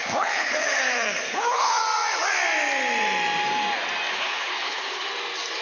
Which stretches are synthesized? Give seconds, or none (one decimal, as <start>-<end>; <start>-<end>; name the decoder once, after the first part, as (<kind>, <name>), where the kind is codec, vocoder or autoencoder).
0.0-1.8 (codec, HILCodec); 4.1-5.1